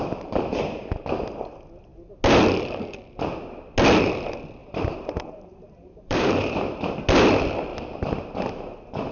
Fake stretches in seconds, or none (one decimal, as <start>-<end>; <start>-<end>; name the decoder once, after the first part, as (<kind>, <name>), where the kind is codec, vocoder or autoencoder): 4.6-6.9 (vocoder, BigVGAN v2)